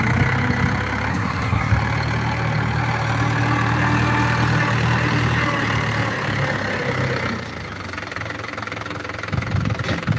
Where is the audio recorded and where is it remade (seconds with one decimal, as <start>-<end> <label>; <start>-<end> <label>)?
0.0-1.1 recorded; 1.1-1.7 remade; 1.7-10.2 recorded